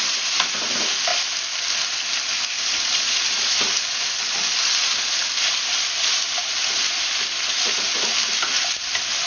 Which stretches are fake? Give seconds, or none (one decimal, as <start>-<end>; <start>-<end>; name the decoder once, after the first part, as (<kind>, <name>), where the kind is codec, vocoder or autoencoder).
none